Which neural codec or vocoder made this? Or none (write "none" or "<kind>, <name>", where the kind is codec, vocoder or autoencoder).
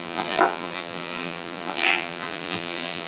vocoder, BigVGAN v2